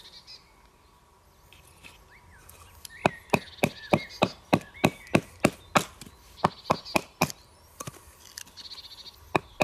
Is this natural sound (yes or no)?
yes